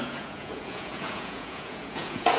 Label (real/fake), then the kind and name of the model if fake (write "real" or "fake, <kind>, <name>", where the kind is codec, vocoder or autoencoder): fake, vocoder, Vocos